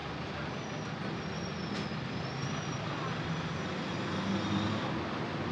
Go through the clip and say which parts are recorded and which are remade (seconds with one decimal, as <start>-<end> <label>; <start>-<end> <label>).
0.0-5.5 recorded